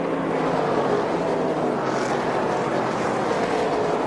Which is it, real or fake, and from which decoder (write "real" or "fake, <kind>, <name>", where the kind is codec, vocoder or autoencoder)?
real